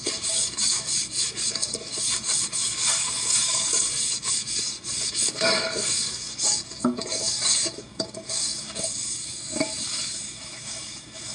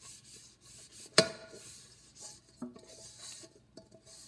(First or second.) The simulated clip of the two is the first